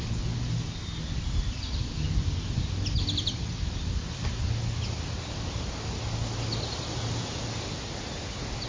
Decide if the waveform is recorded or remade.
recorded